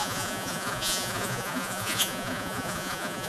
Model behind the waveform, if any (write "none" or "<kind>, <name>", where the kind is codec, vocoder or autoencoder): vocoder, Vocos